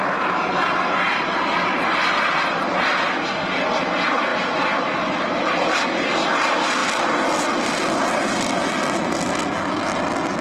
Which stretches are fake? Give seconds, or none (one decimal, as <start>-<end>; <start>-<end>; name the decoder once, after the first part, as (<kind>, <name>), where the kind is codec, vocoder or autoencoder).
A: none